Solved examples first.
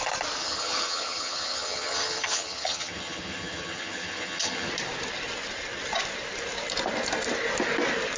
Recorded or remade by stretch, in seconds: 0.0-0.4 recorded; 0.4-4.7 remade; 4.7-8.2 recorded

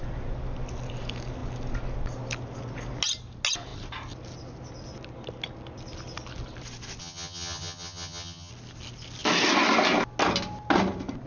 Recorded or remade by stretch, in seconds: 0.0-7.0 recorded; 7.0-8.5 remade; 8.5-11.3 recorded

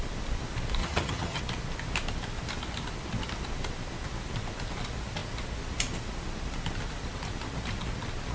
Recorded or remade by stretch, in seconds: 0.0-0.8 recorded; 0.8-1.4 remade; 1.4-8.3 recorded

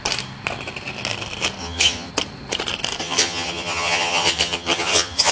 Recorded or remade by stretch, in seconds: 0.0-1.6 recorded; 1.6-2.1 remade; 2.1-3.0 recorded; 3.0-5.3 remade

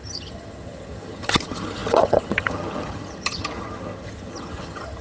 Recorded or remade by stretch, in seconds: 0.0-5.0 remade

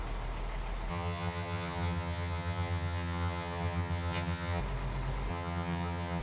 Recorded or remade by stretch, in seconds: 0.0-0.9 recorded; 0.9-4.6 remade; 4.6-5.3 recorded; 5.3-6.2 remade